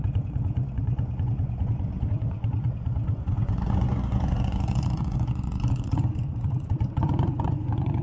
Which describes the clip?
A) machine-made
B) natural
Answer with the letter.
A